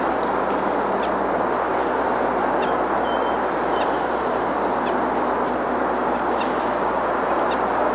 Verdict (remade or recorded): recorded